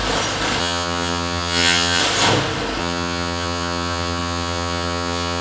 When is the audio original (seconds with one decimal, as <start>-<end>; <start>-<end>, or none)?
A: 0.0-0.6; 2.0-2.8